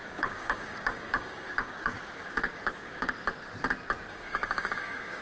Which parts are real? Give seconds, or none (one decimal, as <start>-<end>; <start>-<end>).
3.1-4.1